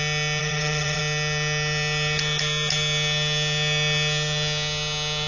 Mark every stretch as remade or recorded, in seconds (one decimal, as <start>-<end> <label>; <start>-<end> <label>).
0.0-0.4 recorded; 0.4-1.0 remade; 1.0-5.3 recorded